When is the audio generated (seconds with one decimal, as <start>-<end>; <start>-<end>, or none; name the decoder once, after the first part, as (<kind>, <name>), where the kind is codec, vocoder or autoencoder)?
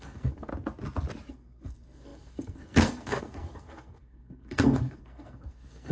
0.0-0.5 (codec, SNAC); 1.3-5.9